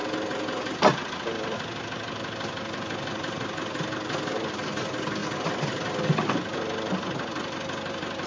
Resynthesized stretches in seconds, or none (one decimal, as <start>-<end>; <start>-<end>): none